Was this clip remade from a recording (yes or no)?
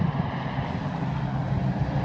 no